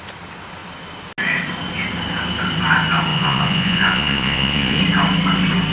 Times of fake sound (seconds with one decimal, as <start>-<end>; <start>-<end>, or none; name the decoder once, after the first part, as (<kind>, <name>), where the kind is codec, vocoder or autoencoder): 3.1-4.8 (vocoder, Vocos)